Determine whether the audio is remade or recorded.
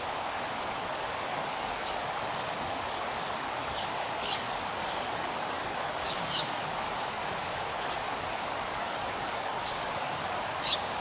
remade